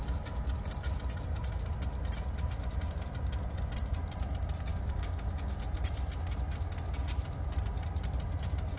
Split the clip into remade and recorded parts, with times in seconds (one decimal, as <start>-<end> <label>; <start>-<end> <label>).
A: 0.0-4.7 recorded; 4.7-5.6 remade; 5.6-8.8 recorded